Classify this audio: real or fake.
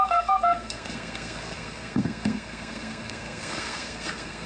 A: fake